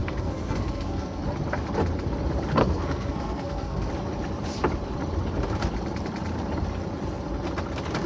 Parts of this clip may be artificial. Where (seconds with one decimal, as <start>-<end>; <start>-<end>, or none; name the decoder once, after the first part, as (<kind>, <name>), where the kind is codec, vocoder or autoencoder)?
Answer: 0.0-1.2 (codec, SNAC); 2.6-3.9